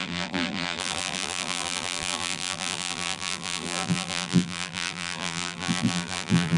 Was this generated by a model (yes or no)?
yes